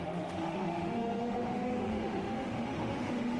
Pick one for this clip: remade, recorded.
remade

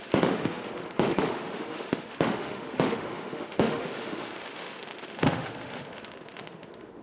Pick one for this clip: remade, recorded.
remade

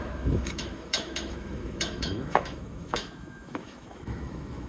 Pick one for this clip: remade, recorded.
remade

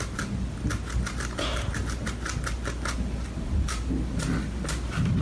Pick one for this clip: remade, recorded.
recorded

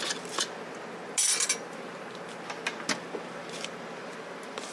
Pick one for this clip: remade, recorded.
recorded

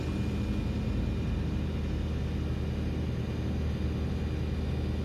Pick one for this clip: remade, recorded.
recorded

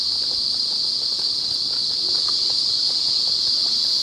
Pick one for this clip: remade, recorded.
recorded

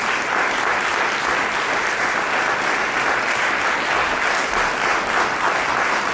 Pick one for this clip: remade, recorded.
recorded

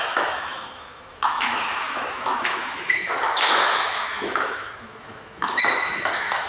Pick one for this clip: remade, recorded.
remade